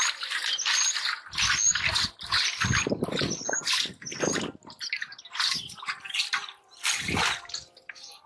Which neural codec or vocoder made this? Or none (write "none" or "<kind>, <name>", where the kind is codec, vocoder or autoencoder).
none